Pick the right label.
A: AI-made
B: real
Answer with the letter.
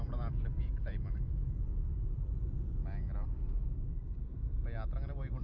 A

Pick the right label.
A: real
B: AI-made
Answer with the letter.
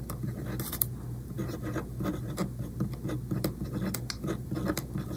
A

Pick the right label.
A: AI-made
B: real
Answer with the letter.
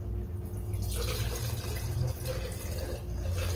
B